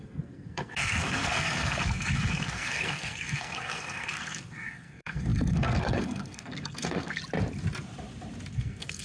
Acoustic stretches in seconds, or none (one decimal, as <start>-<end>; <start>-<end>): 7.2-8.5